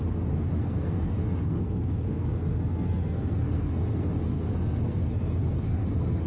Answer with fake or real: fake